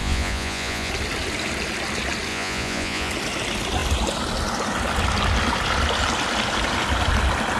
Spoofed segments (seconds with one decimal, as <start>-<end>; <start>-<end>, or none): 0.0-0.9; 2.3-3.1